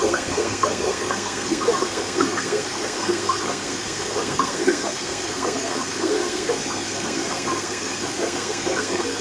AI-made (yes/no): yes